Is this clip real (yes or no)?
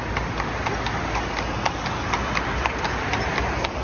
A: yes